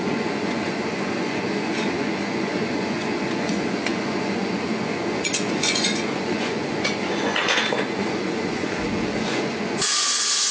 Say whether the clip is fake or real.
fake